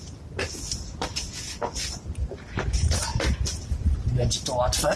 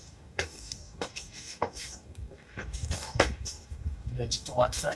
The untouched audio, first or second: first